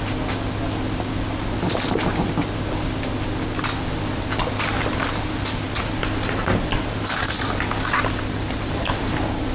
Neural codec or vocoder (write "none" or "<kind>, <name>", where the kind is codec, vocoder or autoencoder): none